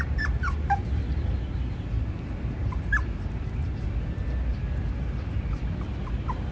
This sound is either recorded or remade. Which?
recorded